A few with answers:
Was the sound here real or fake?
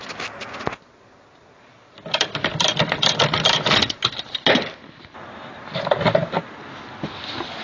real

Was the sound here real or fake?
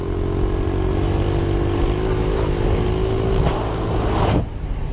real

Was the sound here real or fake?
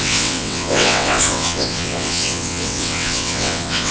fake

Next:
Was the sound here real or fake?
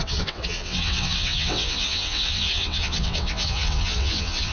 fake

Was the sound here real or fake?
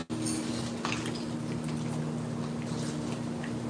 real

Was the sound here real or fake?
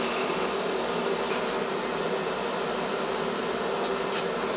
real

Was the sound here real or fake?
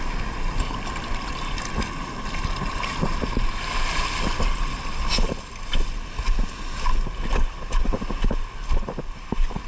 real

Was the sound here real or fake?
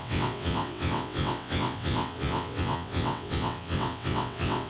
fake